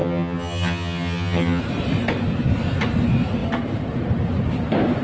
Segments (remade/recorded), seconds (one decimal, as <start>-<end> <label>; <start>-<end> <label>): 0.0-1.6 remade; 1.6-5.0 recorded